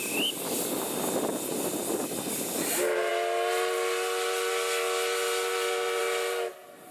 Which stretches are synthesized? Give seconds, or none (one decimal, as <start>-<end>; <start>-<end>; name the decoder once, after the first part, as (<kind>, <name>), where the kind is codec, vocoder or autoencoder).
none